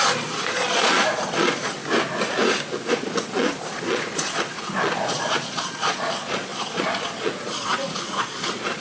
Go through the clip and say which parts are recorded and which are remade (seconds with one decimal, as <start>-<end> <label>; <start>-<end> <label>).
0.0-1.8 remade; 1.8-2.9 recorded; 2.9-8.8 remade